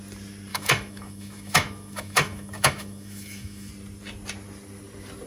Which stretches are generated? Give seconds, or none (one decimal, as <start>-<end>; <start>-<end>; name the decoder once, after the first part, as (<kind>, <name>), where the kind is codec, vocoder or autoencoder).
0.5-3.7 (autoencoder, DAC-VAE)